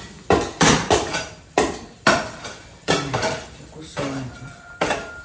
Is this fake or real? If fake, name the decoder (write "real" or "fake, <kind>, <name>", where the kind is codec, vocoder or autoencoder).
fake, vocoder, BigVGAN v2